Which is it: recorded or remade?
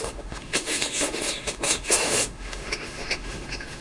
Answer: remade